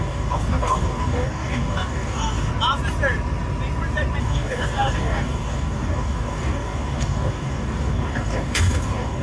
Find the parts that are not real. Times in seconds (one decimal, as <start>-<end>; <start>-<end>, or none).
0.0-2.5; 4.2-9.2